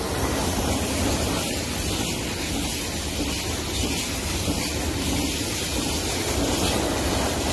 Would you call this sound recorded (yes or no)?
yes